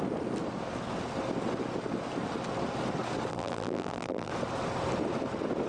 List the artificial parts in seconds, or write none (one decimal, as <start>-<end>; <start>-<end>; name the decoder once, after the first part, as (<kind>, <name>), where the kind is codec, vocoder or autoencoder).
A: 3.3-4.3 (vocoder, BigVGAN v2)